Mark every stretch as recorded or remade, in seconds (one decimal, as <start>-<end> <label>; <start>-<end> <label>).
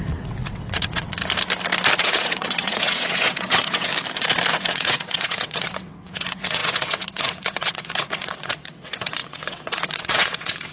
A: 0.0-1.2 remade; 1.2-2.0 recorded; 2.0-3.9 remade; 3.9-4.5 recorded; 4.5-10.7 remade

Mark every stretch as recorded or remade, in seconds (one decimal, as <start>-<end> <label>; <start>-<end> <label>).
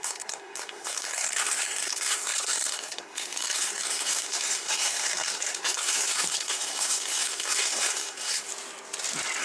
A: 0.0-8.5 remade; 8.5-9.4 recorded